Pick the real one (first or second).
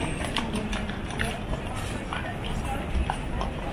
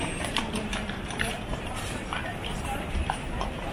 first